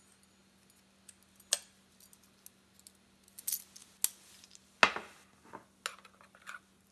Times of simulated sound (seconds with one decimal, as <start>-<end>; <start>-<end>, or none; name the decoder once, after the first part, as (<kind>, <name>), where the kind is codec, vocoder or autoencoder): none